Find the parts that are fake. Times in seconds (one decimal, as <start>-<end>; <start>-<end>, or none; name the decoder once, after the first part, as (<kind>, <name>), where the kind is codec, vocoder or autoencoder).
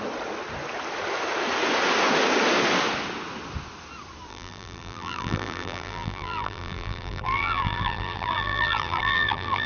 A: 4.3-9.7 (vocoder, BigVGAN v2)